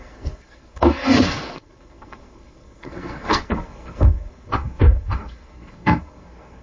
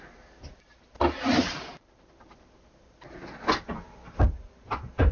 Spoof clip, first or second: first